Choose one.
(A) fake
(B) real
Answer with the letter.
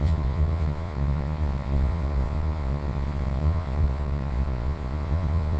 A